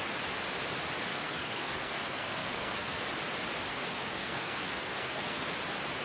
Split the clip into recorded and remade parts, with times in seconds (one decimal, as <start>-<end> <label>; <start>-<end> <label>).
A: 0.0-1.1 recorded; 1.1-3.0 remade; 3.0-3.7 recorded; 3.7-5.5 remade; 5.5-6.0 recorded